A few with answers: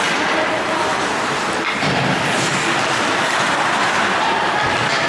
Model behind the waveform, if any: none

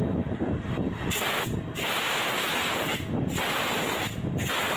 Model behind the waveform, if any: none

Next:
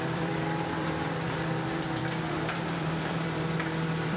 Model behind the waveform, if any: vocoder, BigVGAN v2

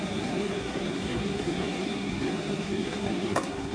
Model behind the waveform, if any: codec, SNAC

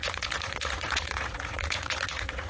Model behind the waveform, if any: vocoder, Vocos